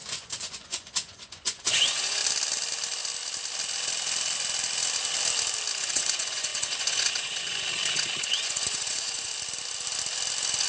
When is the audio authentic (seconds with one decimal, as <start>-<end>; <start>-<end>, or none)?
2.2-5.8; 9.3-10.7

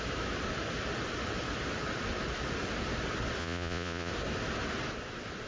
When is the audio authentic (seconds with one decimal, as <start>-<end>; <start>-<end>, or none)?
0.0-3.4; 4.1-5.5

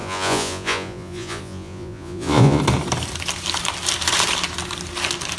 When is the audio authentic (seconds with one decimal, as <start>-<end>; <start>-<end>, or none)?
2.6-5.4

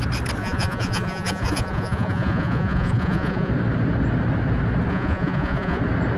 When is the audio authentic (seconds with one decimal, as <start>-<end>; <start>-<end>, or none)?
0.0-0.4; 3.5-4.9; 5.8-6.2

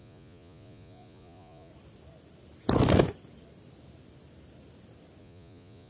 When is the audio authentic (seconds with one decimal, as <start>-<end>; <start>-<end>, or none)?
1.7-5.2

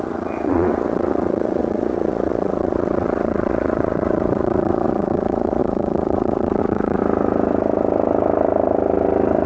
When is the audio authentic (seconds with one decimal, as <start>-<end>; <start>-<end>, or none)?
7.0-9.5

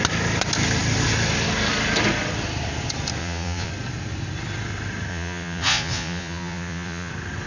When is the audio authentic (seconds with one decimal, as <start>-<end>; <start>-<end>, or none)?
0.0-3.2; 3.7-5.1; 7.1-7.5

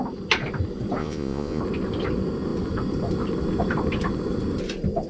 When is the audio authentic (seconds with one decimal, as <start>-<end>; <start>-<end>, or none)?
0.0-1.0; 1.6-5.1